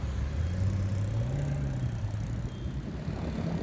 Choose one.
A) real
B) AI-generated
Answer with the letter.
A